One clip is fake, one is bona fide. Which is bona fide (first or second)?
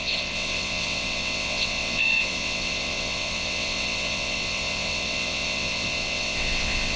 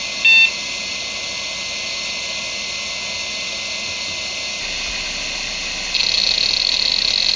second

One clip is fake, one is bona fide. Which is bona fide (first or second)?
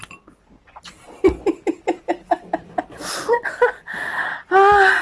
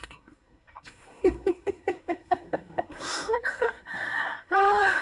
first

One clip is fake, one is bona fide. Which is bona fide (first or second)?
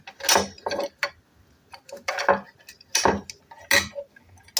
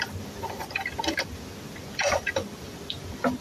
first